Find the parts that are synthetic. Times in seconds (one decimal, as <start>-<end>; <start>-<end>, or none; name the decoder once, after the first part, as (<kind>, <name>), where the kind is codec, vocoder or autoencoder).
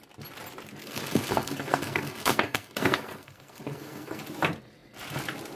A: 0.8-4.2 (codec, SNAC)